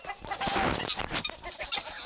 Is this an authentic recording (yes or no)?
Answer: yes